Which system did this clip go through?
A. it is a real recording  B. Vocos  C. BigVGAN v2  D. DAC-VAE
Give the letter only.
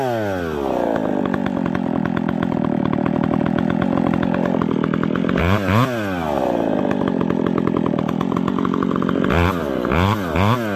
A